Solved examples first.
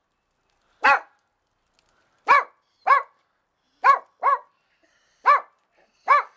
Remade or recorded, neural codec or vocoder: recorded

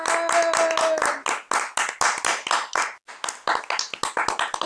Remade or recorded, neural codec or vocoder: recorded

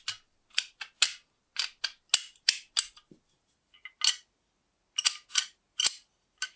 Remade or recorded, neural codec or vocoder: recorded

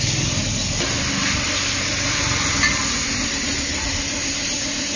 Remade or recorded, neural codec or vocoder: recorded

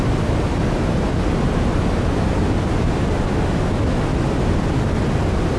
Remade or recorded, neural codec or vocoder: recorded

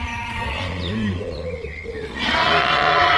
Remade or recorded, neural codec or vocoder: remade, vocoder, Vocos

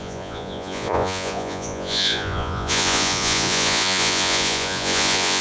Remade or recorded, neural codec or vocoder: remade, vocoder, Vocos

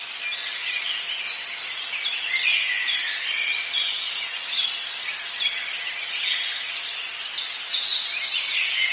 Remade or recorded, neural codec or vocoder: recorded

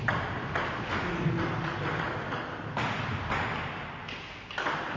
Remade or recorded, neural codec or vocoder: recorded